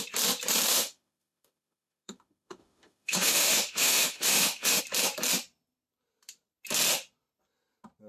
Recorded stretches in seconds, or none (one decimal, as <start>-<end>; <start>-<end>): 0.0-0.7; 4.8-8.1